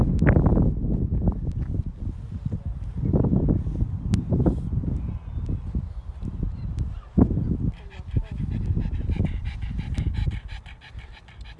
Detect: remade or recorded recorded